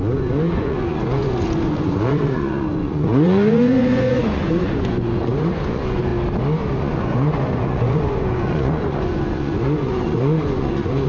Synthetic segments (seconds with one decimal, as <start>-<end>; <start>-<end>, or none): 0.0-6.1; 6.8-11.1